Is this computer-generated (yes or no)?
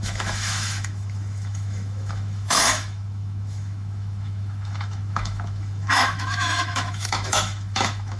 yes